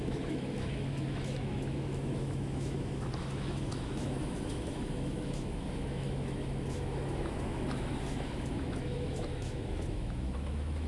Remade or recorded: remade